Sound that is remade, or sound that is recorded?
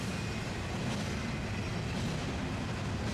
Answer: recorded